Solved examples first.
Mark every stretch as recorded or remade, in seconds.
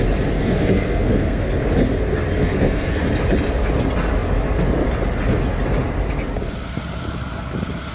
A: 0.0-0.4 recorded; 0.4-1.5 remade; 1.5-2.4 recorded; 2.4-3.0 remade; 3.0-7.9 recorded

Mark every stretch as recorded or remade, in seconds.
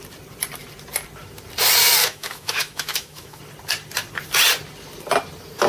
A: 0.0-2.0 recorded; 2.0-3.4 remade; 3.4-5.7 recorded